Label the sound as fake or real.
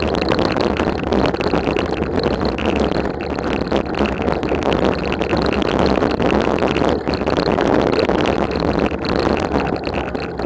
fake